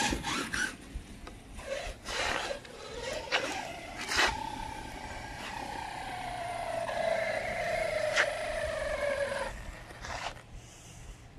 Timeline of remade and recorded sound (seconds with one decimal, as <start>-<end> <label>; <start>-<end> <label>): 0.0-11.4 recorded